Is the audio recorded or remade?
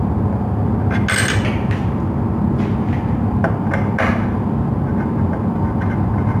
recorded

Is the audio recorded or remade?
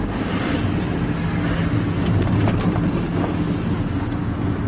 recorded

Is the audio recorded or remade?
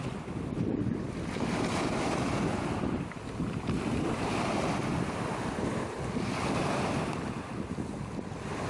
recorded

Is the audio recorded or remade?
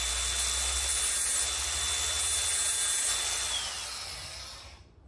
recorded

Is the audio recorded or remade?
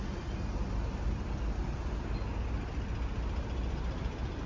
recorded